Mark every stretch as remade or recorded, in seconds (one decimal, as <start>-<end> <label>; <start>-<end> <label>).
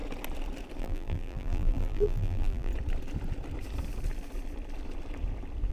0.0-0.8 recorded; 0.8-2.7 remade; 2.7-5.7 recorded